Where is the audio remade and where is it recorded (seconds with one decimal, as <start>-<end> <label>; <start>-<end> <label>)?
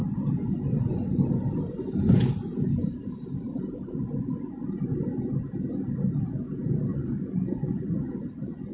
0.0-6.9 recorded; 6.9-8.7 remade